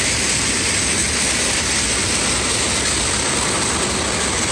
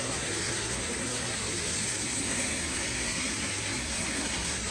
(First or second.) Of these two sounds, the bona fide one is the first